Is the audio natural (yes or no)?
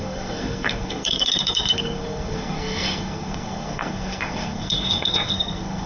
no